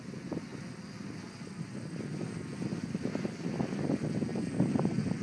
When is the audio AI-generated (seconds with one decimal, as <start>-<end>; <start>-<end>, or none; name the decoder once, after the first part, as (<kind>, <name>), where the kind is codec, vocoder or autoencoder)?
none